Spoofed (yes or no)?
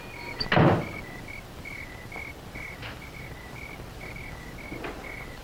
no